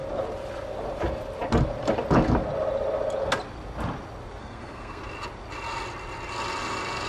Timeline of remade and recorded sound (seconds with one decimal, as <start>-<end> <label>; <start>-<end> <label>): 0.0-4.4 recorded; 4.4-5.0 remade; 5.0-7.1 recorded